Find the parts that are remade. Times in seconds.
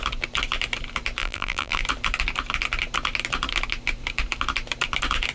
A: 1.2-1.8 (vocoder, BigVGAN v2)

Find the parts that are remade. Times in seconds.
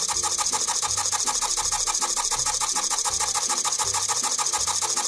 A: none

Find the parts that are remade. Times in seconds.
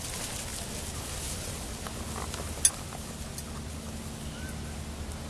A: none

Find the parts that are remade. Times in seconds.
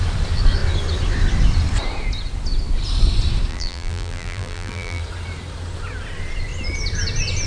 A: 3.5-5.0 (vocoder, BigVGAN v2)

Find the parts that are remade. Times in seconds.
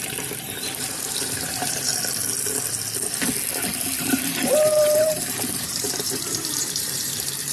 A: 0.0-1.9 (vocoder, BigVGAN v2); 4.0-7.5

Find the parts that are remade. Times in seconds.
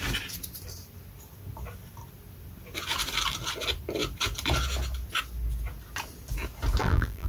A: 6.8-7.3 (vocoder, BigVGAN v2)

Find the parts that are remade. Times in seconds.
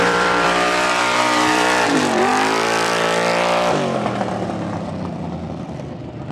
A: 0.0-6.3 (vocoder, BigVGAN v2)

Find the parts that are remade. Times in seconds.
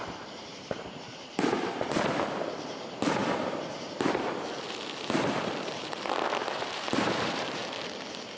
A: 0.0-3.2 (vocoder, BigVGAN v2); 5.0-7.6